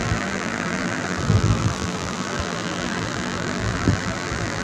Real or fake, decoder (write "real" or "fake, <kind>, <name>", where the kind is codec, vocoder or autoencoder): fake, vocoder, BigVGAN v2